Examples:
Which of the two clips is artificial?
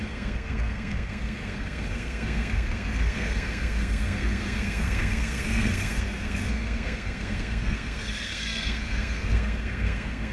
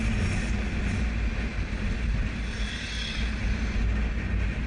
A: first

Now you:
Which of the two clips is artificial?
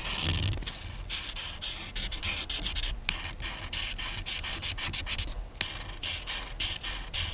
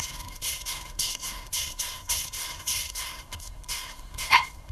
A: second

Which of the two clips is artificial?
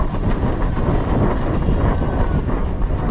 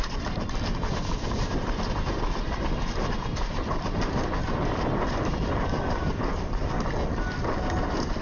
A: second